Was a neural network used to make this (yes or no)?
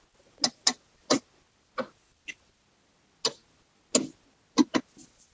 no